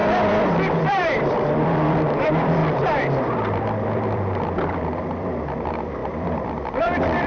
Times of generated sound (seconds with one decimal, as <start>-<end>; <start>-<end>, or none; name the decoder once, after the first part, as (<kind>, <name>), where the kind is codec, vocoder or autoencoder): 0.0-7.3 (vocoder, BigVGAN v2)